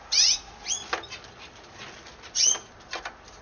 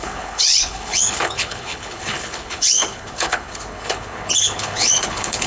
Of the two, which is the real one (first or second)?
first